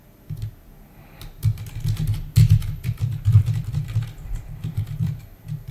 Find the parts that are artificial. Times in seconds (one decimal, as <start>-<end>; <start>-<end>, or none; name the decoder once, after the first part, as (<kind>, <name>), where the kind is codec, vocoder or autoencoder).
2.4-5.2 (vocoder, BigVGAN v2)